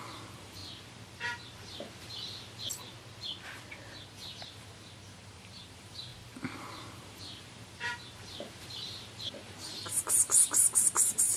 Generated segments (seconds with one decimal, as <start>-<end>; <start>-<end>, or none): 0.0-0.6; 4.6-6.1; 6.6-11.4